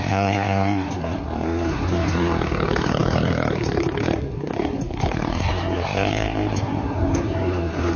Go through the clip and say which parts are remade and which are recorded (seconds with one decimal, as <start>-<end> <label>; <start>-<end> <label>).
0.0-8.0 remade